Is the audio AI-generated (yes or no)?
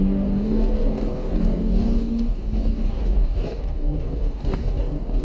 yes